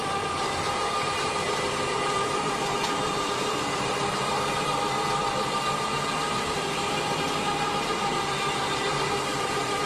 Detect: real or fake fake